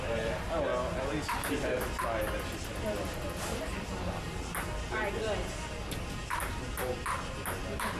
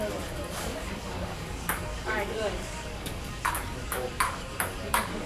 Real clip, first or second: first